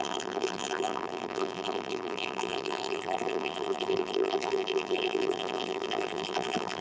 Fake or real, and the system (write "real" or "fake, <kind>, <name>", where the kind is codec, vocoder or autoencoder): fake, vocoder, BigVGAN v2